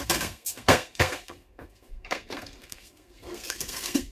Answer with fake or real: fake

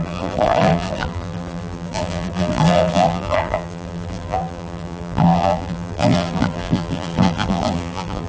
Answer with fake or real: fake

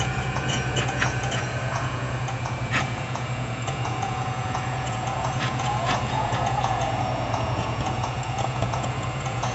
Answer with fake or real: fake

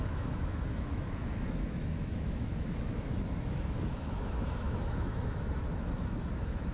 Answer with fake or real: fake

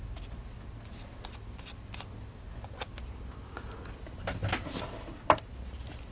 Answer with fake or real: real